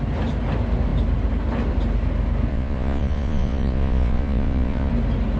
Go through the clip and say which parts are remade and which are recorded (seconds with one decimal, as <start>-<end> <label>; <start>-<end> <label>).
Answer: 0.0-2.5 recorded; 2.5-4.9 remade; 4.9-5.4 recorded